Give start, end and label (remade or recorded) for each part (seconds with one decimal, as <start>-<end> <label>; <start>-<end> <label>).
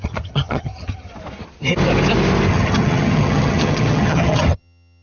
0.0-1.1 remade; 1.1-2.5 recorded; 2.5-5.0 remade